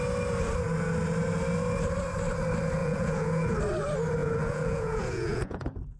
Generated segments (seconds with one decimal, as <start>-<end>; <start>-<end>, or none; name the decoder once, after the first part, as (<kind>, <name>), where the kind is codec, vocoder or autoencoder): 2.8-3.6 (vocoder, Vocos); 4.2-6.0